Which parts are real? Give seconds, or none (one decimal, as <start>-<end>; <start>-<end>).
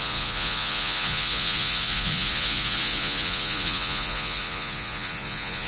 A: none